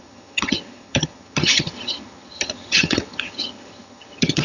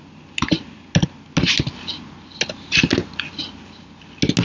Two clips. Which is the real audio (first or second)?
second